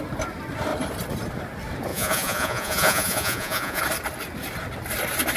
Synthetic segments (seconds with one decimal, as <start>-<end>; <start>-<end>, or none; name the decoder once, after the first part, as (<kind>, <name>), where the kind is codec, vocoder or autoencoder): 1.9-3.8 (vocoder, Vocos)